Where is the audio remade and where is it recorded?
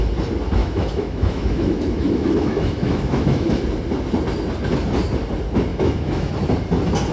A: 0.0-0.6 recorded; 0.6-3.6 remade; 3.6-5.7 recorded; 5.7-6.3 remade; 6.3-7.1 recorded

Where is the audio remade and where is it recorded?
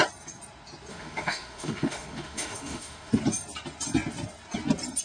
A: 0.0-0.9 recorded; 0.9-3.1 remade; 3.1-5.0 recorded